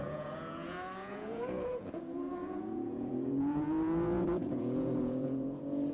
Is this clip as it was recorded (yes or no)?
no